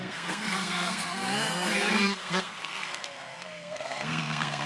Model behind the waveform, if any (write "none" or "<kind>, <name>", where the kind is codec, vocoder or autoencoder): codec, SNAC